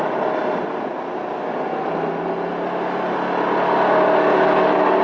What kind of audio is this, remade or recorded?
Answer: recorded